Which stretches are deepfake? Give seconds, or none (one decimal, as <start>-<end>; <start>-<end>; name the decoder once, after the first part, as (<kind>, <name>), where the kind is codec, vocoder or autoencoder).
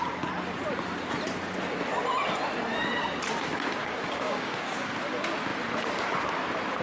3.8-4.9 (codec, DAC)